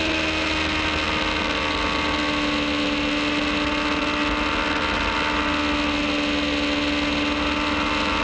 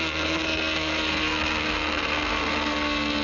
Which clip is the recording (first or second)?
first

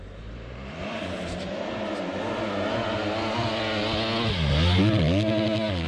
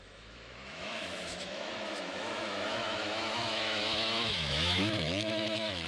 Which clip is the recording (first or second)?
first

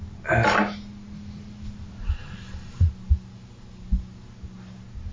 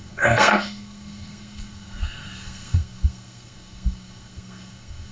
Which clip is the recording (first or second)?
first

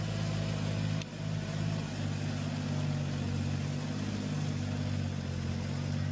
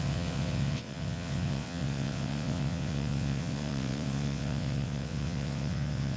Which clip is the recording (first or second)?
first